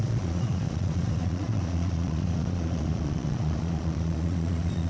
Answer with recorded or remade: remade